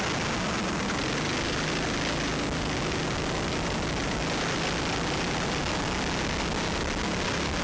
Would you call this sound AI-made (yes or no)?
no